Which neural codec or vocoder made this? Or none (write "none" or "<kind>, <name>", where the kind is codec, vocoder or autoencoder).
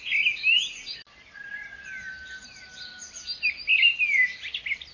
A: none